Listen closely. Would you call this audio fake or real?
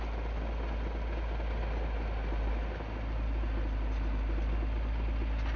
real